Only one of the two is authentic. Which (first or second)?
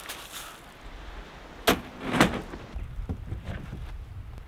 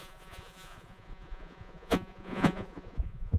first